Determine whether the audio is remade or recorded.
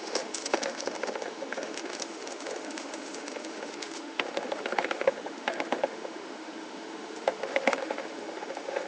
remade